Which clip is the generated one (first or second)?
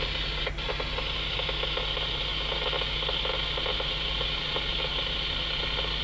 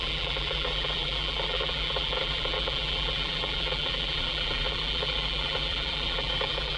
second